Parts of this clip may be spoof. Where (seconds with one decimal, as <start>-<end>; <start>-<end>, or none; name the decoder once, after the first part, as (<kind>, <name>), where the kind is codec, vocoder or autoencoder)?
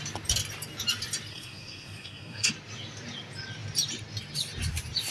1.3-2.5 (codec, SNAC)